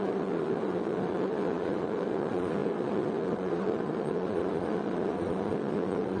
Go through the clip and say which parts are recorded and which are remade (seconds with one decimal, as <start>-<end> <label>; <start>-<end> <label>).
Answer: 0.0-6.2 remade